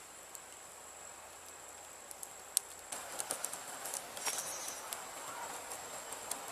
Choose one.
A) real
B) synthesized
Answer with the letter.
A